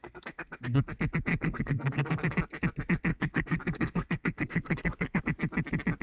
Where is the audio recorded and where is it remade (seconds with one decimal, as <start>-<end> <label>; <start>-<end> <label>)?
0.0-0.8 remade; 0.8-1.3 recorded; 1.3-2.4 remade; 2.4-3.1 recorded; 3.1-5.2 remade; 5.2-6.0 recorded